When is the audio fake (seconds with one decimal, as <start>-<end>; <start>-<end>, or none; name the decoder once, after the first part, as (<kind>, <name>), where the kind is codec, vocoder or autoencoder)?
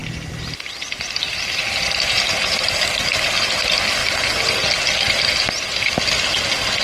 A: 0.0-1.1 (vocoder, BigVGAN v2); 4.0-5.5